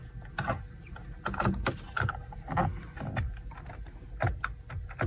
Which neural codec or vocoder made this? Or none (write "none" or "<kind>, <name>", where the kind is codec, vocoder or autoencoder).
none